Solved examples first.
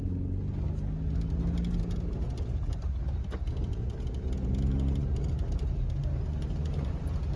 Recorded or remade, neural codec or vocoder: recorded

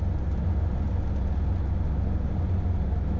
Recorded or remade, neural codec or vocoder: recorded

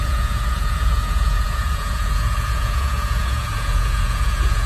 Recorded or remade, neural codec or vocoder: remade, vocoder, Vocos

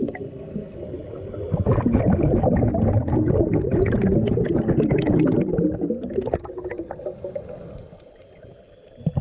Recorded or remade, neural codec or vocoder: recorded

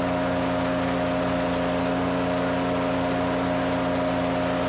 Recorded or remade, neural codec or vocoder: recorded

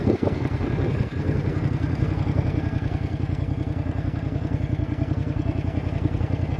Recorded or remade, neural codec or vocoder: remade, codec, SNAC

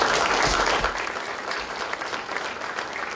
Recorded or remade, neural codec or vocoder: recorded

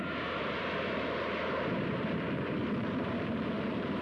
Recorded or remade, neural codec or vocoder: remade, vocoder, BigVGAN v2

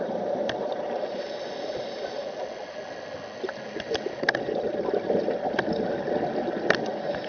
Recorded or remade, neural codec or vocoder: recorded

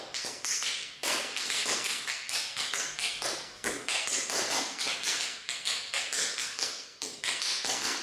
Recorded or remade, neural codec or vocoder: remade, codec, SNAC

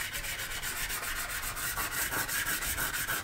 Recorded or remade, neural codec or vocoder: recorded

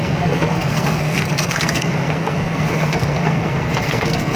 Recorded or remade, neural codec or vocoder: remade, codec, SNAC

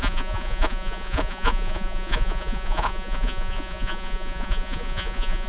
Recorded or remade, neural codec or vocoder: remade, vocoder, Vocos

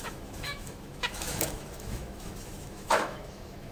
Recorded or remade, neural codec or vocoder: remade, autoencoder, DAC-VAE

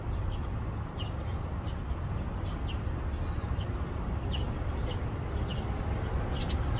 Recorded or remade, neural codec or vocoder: recorded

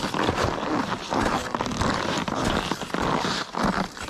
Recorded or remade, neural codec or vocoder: recorded